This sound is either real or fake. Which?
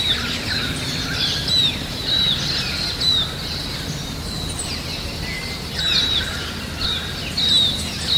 real